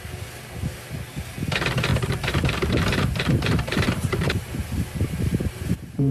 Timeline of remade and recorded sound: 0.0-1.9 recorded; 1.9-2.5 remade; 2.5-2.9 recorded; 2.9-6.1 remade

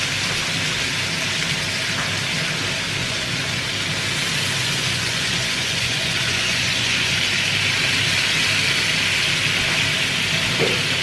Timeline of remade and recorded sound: 0.0-3.0 recorded; 3.0-3.6 remade; 3.6-4.6 recorded; 4.6-7.2 remade; 7.2-11.0 recorded

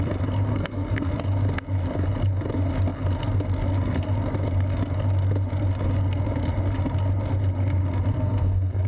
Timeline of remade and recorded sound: 0.0-0.5 recorded; 0.5-1.1 remade; 1.1-8.1 recorded; 8.1-8.9 remade

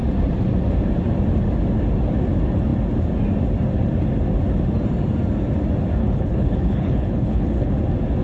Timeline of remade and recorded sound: 0.0-6.0 recorded; 6.0-7.7 remade; 7.7-8.2 recorded